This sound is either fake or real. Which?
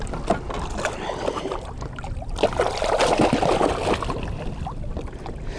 real